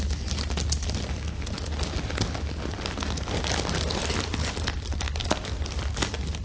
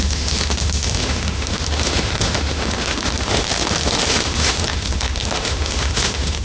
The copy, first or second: second